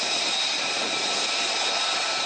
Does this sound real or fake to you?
real